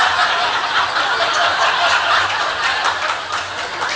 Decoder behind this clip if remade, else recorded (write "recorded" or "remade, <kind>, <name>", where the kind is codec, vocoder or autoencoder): recorded